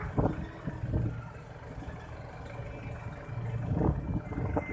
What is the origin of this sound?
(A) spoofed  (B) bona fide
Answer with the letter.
B